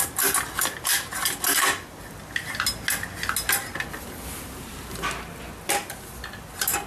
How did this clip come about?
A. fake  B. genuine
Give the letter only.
B